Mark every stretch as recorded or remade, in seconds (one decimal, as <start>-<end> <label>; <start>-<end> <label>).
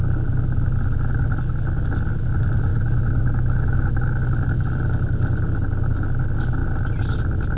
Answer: 0.0-2.7 recorded; 2.7-4.2 remade; 4.2-7.6 recorded